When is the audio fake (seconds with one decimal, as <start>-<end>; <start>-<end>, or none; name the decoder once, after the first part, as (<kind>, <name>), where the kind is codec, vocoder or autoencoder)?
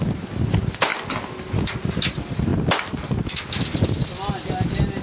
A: none